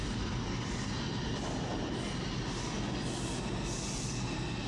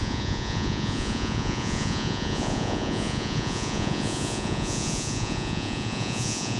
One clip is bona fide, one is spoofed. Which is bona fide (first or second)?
first